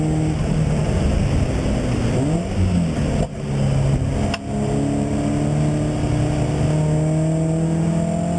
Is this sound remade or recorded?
recorded